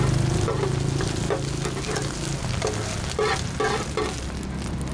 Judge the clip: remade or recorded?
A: recorded